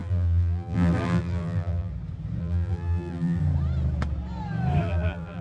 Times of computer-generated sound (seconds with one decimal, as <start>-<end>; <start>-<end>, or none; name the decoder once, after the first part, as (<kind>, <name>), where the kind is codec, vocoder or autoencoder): 0.0-1.9 (vocoder, BigVGAN v2); 2.4-3.4; 4.8-5.4